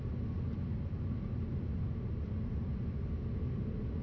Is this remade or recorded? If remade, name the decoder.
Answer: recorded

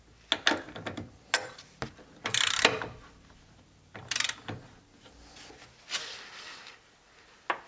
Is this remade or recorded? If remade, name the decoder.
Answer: recorded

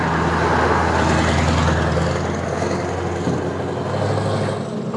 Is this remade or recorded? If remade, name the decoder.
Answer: recorded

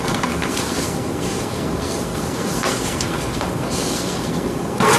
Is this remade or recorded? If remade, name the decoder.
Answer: remade, codec, SNAC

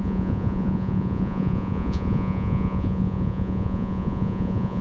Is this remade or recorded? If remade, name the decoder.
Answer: remade, vocoder, Vocos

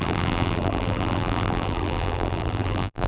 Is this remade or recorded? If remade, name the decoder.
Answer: remade, vocoder, BigVGAN v2